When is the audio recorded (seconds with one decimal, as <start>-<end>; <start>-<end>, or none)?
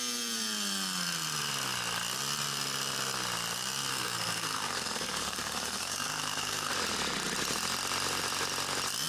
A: 0.0-3.9; 6.7-9.1